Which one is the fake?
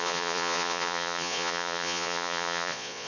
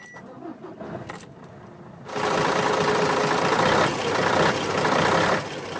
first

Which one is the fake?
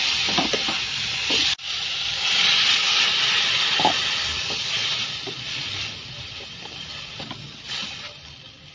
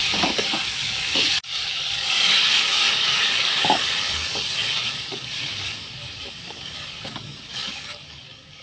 second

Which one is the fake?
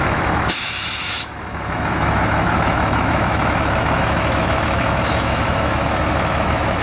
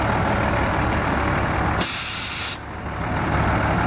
first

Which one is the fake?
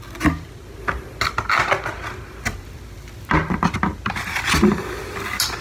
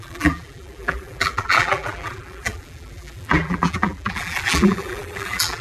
second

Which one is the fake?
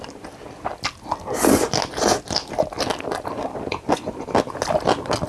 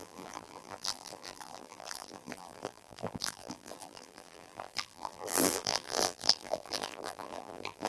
second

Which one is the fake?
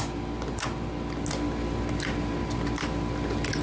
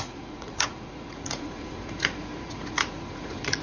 second